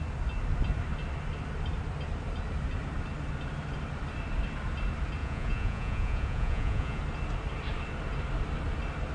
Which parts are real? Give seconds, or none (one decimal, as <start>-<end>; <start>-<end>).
0.0-5.2; 7.0-9.1